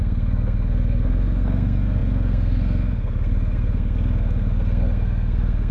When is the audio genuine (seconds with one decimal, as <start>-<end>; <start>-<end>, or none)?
none